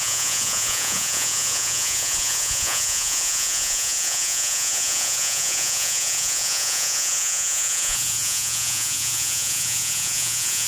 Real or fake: fake